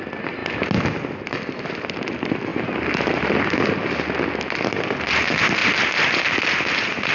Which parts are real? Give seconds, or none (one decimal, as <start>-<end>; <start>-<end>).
0.0-7.1